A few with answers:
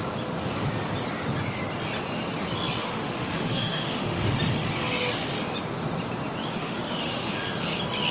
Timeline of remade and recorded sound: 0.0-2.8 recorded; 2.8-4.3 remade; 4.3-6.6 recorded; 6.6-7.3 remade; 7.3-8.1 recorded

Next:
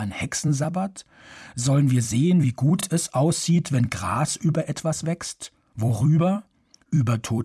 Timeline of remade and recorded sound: 0.0-7.4 remade

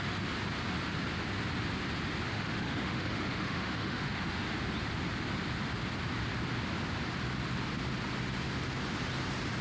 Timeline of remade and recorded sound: 0.0-2.3 recorded; 2.3-4.4 remade; 4.4-9.6 recorded

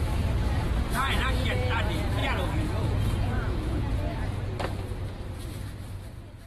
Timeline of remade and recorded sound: 0.0-1.0 recorded; 1.0-1.8 remade; 1.8-2.2 recorded; 2.2-4.5 remade; 4.5-6.5 recorded